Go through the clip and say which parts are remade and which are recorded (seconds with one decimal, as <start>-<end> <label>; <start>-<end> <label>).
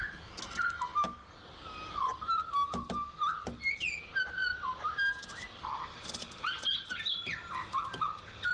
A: 0.0-4.4 recorded; 4.4-7.5 remade; 7.5-8.5 recorded